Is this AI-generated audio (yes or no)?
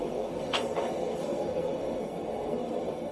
yes